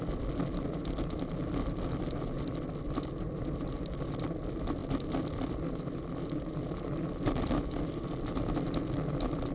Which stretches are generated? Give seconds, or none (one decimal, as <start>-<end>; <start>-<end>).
none